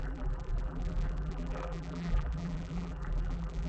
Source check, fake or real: fake